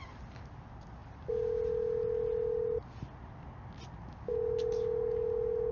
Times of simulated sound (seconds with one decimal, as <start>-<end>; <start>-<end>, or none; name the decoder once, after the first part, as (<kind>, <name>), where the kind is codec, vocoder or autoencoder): none